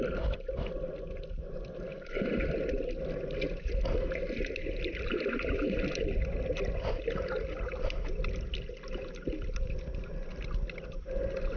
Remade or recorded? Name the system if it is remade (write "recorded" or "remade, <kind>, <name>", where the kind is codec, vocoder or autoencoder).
recorded